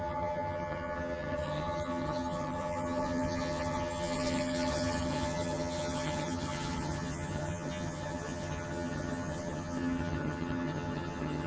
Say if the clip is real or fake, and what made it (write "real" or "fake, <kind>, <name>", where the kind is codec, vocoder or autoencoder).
fake, vocoder, HiFi-GAN